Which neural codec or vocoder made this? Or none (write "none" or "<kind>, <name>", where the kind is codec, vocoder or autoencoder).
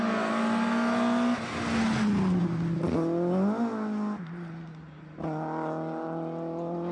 none